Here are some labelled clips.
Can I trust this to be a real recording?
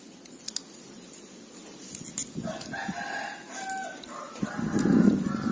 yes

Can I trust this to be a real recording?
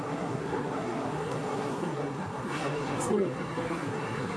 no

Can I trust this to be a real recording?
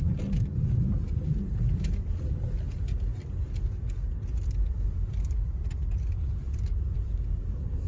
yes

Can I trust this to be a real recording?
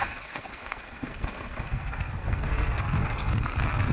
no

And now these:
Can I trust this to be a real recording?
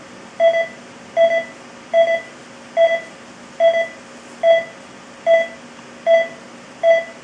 yes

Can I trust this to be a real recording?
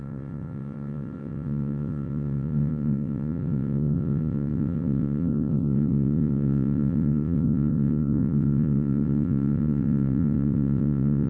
no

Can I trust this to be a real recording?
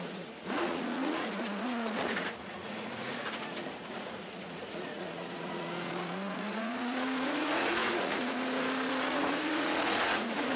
no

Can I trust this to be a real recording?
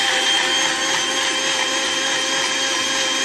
yes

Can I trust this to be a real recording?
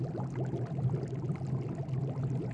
yes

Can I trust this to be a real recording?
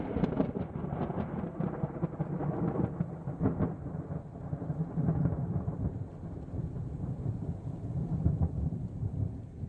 no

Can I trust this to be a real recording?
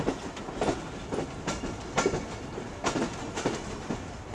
yes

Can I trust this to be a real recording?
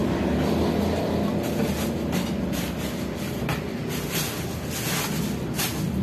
yes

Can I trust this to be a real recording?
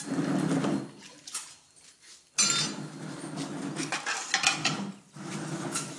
yes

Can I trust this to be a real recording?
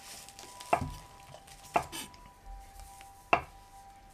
yes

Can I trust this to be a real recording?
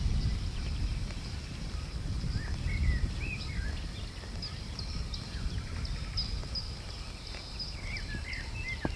yes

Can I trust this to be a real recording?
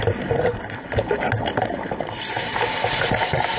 yes